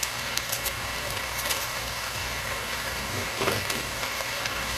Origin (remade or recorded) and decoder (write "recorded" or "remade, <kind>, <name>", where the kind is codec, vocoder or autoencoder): remade, codec, DAC